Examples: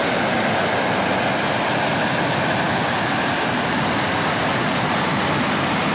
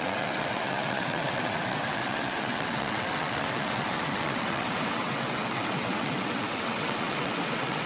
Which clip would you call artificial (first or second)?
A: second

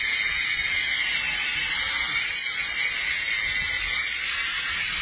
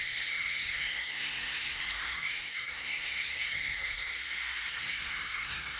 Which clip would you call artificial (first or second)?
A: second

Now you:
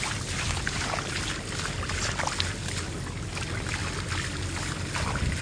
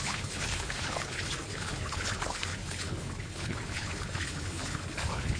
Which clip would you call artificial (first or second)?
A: second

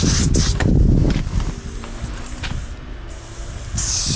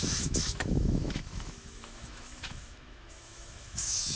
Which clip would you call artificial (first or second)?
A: second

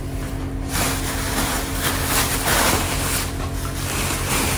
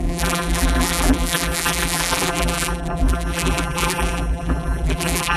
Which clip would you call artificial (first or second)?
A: second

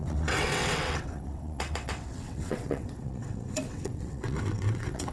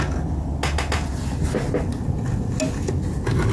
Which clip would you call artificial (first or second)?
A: first